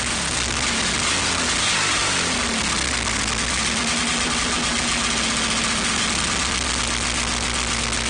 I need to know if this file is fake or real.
real